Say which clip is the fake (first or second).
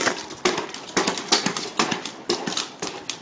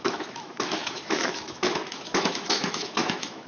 second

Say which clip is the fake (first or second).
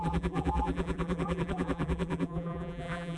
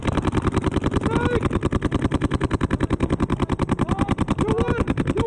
first